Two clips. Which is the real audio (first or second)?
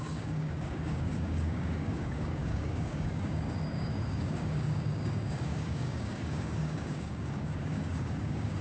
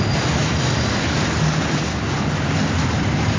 second